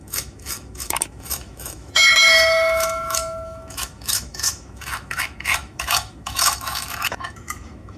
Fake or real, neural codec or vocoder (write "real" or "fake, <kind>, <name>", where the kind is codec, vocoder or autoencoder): fake, autoencoder, DAC-VAE